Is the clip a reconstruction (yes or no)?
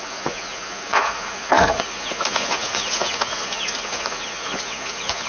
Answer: yes